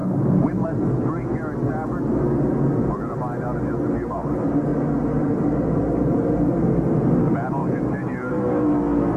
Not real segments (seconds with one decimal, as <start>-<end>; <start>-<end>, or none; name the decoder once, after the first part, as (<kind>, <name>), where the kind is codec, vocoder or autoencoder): none